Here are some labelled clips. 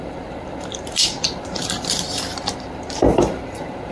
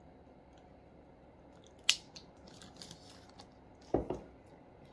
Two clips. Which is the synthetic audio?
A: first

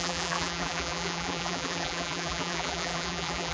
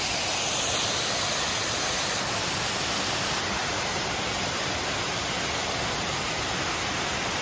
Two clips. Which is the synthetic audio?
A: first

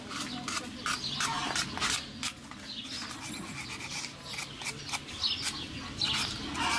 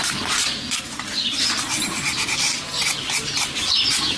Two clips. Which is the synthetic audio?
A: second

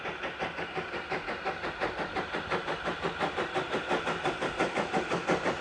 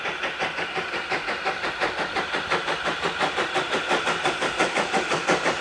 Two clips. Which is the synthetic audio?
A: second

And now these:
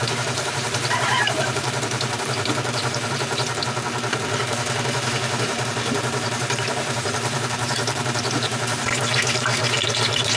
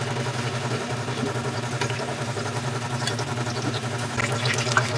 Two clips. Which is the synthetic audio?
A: first